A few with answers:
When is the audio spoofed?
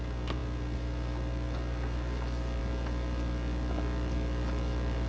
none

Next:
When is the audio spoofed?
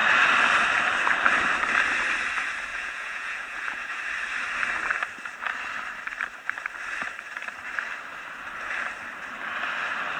2.7-4.0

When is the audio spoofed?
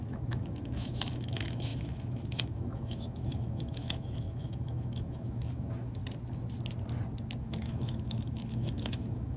0.0-6.0; 7.4-9.4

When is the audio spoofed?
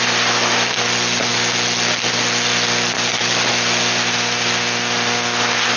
none